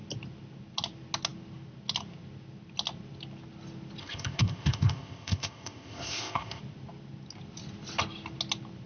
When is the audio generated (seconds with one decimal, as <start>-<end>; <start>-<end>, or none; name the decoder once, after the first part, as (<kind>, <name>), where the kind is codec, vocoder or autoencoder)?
4.0-6.6 (codec, ZipCodec)